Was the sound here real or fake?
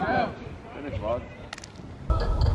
real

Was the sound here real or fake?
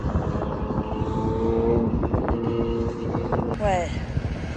real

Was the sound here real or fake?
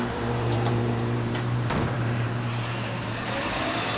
fake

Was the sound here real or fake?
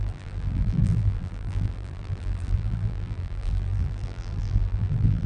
fake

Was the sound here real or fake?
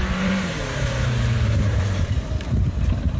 fake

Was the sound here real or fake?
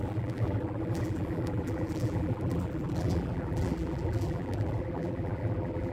fake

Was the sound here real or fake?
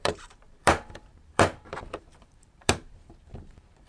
fake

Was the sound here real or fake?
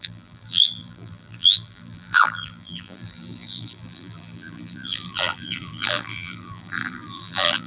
fake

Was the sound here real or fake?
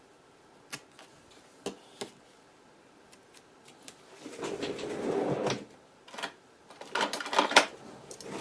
real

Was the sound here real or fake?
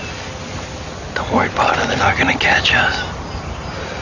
real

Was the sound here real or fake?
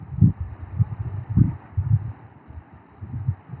fake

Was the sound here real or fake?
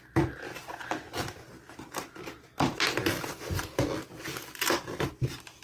real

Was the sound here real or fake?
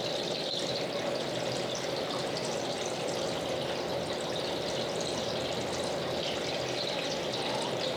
real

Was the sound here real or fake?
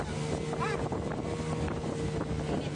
real